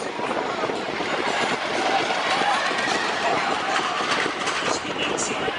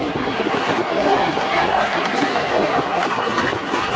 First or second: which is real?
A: first